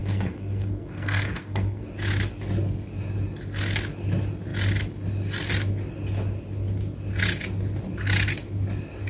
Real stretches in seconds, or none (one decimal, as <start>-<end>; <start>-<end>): 1.8-9.1